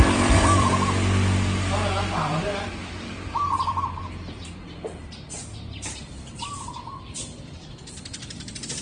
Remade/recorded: remade